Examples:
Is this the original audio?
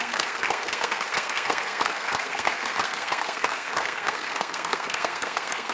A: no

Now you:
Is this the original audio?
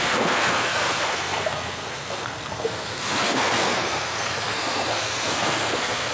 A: no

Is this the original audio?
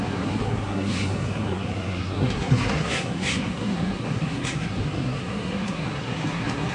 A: no